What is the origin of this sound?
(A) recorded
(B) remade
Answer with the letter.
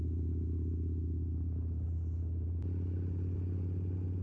A